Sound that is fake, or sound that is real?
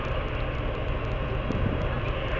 real